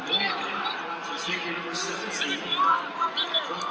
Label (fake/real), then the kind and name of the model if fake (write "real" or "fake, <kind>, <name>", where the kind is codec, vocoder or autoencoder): real